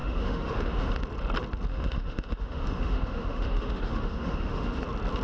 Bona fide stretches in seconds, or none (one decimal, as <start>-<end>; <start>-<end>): 0.9-1.7; 4.8-5.2